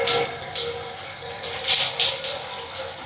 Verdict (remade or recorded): recorded